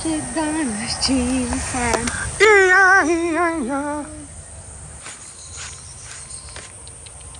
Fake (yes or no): no